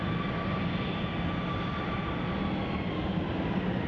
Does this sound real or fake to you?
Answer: real